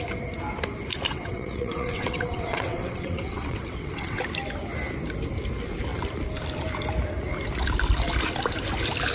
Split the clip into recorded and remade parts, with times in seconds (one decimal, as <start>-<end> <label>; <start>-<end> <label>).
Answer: 0.0-1.1 recorded; 1.1-4.2 remade; 4.2-9.1 recorded